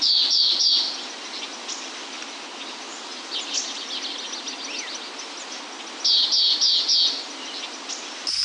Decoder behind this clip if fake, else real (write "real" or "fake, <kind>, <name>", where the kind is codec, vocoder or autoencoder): real